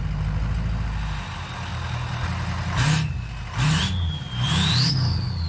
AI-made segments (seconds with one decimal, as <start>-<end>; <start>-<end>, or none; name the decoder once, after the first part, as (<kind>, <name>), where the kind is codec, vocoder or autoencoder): none